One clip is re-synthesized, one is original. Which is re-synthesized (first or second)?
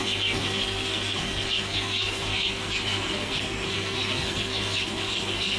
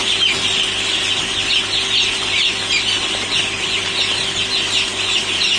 first